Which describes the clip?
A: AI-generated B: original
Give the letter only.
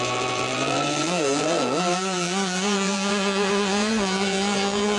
A